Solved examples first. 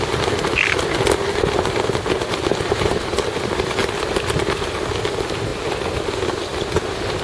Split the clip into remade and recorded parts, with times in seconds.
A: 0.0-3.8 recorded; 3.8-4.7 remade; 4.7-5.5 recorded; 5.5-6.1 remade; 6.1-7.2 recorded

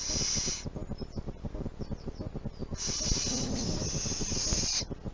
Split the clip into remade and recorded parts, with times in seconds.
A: 0.0-5.1 recorded

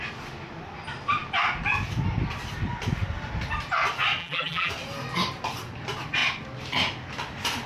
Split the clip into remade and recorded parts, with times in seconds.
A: 0.0-4.2 recorded; 4.2-4.7 remade; 4.7-7.7 recorded

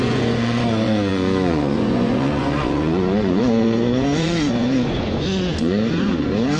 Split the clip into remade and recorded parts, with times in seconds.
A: 0.0-6.6 remade

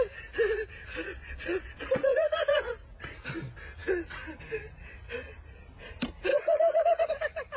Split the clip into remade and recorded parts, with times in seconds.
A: 0.0-1.1 recorded; 1.1-2.7 remade; 2.7-6.3 recorded; 6.3-7.1 remade; 7.1-7.6 recorded